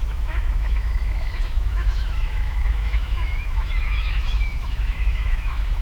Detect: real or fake fake